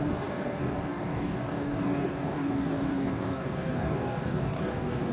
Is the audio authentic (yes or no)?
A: no